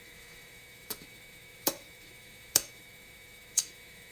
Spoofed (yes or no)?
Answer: yes